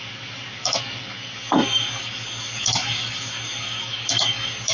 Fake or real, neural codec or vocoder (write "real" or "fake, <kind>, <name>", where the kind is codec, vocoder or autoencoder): fake, codec, DAC